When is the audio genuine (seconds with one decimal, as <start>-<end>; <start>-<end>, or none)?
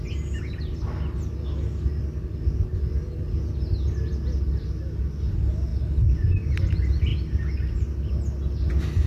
0.0-9.1